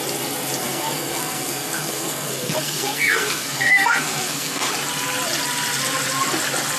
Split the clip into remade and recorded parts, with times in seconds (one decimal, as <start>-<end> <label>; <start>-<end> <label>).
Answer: 0.0-0.6 recorded; 0.6-4.7 remade; 4.7-6.8 recorded

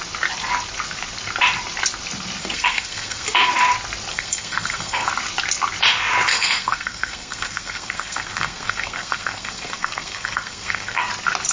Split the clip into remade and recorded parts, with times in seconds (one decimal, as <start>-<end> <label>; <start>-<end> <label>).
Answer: 0.0-2.4 recorded; 2.4-3.5 remade; 3.5-4.1 recorded; 4.1-5.1 remade; 5.1-6.3 recorded; 6.3-11.1 remade; 11.1-11.5 recorded

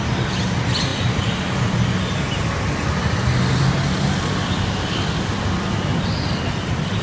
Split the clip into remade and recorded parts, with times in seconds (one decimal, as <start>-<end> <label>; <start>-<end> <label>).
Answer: 0.0-7.0 recorded

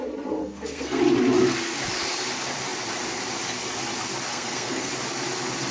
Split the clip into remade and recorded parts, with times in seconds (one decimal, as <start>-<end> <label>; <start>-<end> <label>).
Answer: 0.0-0.4 recorded; 0.4-1.0 remade; 1.0-4.3 recorded; 4.3-4.9 remade; 4.9-5.7 recorded

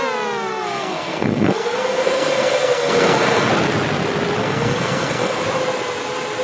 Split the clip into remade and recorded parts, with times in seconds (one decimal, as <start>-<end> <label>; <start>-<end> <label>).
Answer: 0.0-0.5 recorded; 0.5-3.5 remade; 3.5-4.4 recorded; 4.4-5.4 remade; 5.4-6.4 recorded